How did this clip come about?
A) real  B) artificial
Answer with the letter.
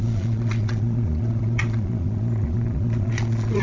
B